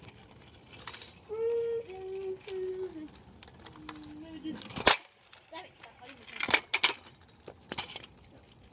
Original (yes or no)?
yes